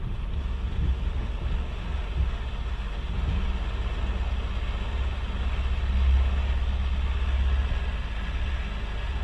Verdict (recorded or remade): recorded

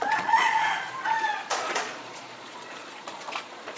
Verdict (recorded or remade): remade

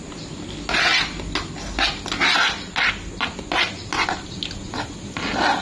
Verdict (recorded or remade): recorded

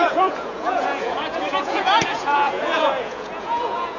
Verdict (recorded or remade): remade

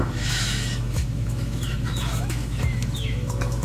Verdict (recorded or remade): remade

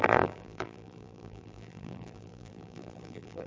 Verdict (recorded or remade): remade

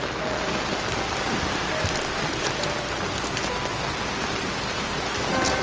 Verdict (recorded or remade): recorded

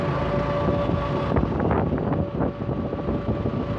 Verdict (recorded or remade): recorded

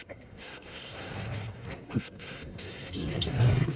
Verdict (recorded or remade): remade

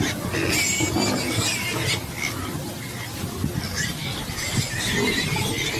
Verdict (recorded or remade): recorded